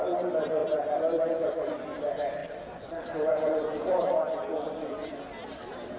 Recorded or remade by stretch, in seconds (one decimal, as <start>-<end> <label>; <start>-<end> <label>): 0.0-2.4 recorded; 2.4-5.2 remade; 5.2-6.0 recorded